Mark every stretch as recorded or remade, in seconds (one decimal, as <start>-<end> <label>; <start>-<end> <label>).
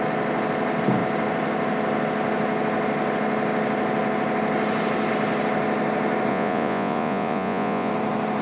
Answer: 0.0-6.3 recorded; 6.3-7.9 remade; 7.9-8.4 recorded